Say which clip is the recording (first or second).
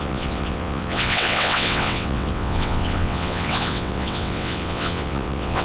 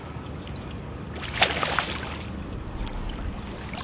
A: second